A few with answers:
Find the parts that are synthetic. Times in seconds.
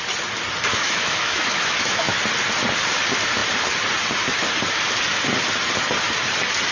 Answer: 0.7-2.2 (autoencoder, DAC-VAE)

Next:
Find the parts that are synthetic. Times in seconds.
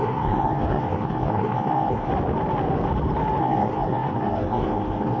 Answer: 0.0-2.1 (codec, SNAC); 3.4-5.2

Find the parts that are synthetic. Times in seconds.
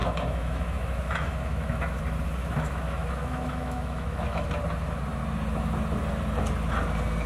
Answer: 0.0-2.0 (autoencoder, DAC-VAE); 2.4-4.5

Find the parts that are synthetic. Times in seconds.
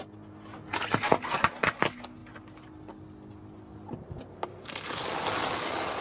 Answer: none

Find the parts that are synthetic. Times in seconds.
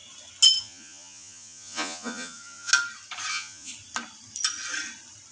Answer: 0.6-2.7 (vocoder, Vocos); 3.3-3.7